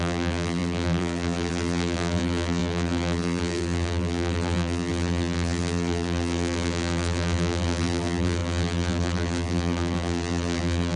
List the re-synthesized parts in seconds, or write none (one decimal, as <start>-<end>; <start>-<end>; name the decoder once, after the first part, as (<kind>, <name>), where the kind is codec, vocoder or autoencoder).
0.0-11.0 (vocoder, BigVGAN v2)